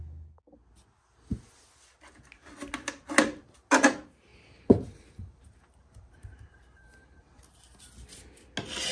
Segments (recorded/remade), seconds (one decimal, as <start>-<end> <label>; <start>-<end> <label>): 0.0-4.3 recorded; 4.3-7.4 remade; 7.4-8.9 recorded